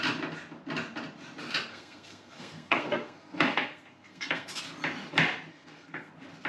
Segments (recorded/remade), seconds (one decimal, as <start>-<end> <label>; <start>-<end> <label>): 0.0-1.7 recorded; 1.7-4.6 remade; 4.6-5.5 recorded; 5.5-6.1 remade; 6.1-6.5 recorded